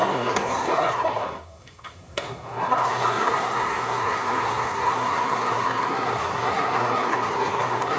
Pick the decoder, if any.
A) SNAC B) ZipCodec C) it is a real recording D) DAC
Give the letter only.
A